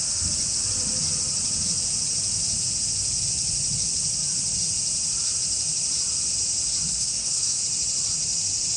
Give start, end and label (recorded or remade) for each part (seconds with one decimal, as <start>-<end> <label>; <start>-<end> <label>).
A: 0.0-6.9 recorded; 6.9-7.6 remade; 7.6-8.8 recorded

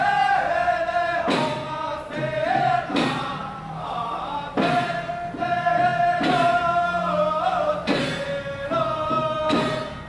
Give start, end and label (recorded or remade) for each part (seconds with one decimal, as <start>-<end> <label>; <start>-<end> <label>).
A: 0.0-10.1 recorded

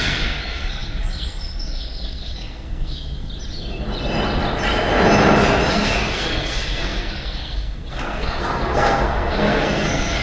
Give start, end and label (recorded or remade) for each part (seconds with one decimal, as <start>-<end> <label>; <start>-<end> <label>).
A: 0.0-3.3 remade; 3.3-5.7 recorded; 5.7-10.2 remade

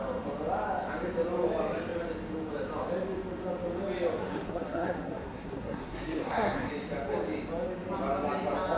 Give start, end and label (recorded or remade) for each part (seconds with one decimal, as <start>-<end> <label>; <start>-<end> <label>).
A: 0.0-4.2 recorded; 4.2-6.7 remade; 6.7-8.8 recorded

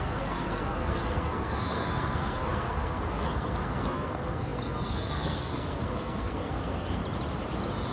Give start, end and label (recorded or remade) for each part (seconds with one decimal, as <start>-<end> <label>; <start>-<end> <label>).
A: 0.0-7.0 remade; 7.0-7.9 recorded

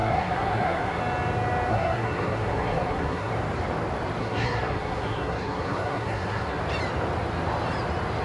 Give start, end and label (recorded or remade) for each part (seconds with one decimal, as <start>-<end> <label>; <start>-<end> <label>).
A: 0.0-1.0 remade; 1.0-1.7 recorded; 1.7-3.3 remade; 3.3-4.2 recorded; 4.2-6.6 remade; 6.6-8.2 recorded